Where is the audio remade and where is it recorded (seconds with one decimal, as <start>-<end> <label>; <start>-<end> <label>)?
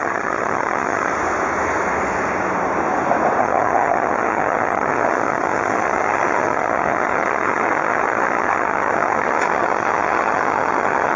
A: 0.0-1.1 remade; 1.1-3.4 recorded; 3.4-11.2 remade